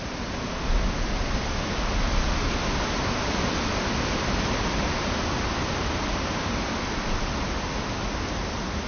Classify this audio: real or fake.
real